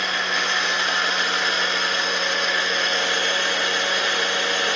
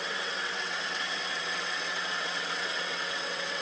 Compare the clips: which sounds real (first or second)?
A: first